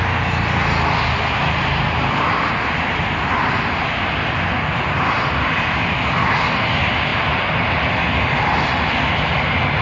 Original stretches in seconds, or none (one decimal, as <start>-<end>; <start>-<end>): 0.0-9.8